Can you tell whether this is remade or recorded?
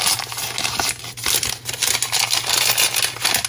recorded